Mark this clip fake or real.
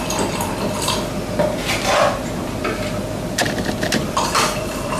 fake